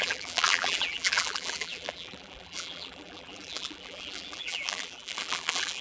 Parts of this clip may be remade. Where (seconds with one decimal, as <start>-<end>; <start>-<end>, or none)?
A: 0.0-5.8